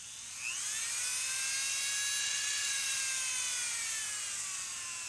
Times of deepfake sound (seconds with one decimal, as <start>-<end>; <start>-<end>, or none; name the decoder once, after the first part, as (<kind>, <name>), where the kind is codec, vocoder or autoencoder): 2.2-3.0 (vocoder, WaveNeXt)

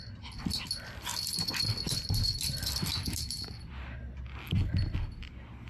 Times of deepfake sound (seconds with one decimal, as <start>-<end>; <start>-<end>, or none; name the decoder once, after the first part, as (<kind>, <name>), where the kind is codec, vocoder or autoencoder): none

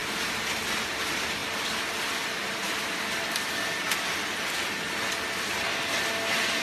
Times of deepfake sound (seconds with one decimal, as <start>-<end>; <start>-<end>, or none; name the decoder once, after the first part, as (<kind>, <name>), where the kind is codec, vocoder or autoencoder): none

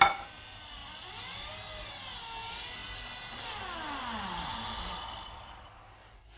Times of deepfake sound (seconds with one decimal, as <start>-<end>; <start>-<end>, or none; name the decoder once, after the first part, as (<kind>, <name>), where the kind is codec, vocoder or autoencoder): none

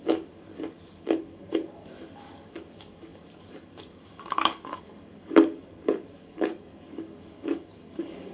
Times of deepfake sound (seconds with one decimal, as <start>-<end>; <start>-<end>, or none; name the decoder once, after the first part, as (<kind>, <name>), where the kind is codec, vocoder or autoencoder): 0.0-8.3 (codec, DAC)